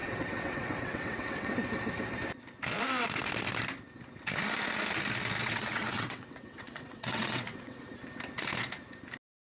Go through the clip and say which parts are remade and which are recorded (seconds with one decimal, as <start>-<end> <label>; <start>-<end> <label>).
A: 0.0-1.5 remade; 1.5-5.4 recorded; 5.4-7.8 remade; 7.8-9.4 recorded